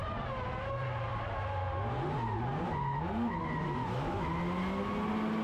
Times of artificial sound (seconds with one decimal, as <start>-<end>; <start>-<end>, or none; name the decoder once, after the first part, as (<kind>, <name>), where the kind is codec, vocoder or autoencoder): 3.8-4.4 (autoencoder, DAC-VAE)

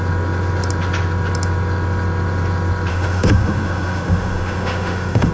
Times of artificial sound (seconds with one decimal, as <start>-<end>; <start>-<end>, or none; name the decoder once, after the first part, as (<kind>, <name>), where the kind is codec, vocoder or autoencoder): 2.9-5.3 (autoencoder, DAC-VAE)

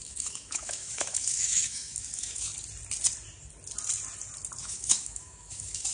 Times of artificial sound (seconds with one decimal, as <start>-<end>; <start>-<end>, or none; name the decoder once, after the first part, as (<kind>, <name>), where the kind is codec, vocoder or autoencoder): 0.0-2.5 (autoencoder, DAC-VAE); 4.6-5.9

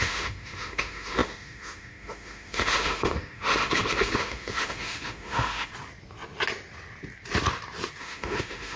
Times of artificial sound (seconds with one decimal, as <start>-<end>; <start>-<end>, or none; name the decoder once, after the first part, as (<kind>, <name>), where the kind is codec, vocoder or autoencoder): 0.0-5.7 (autoencoder, DAC-VAE); 8.0-8.8

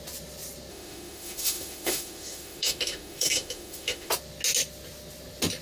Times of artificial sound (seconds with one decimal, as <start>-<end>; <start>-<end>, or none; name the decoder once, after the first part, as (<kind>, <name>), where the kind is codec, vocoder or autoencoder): 0.7-4.1 (autoencoder, DAC-VAE)

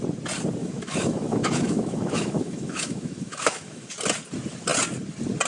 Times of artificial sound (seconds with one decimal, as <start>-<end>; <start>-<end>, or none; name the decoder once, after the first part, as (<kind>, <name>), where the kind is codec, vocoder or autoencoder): 0.6-3.9 (autoencoder, DAC-VAE)

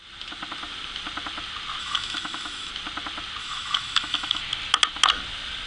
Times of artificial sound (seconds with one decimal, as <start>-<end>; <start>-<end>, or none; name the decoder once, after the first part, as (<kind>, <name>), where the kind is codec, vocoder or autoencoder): 1.8-2.7 (autoencoder, DAC-VAE); 3.4-4.4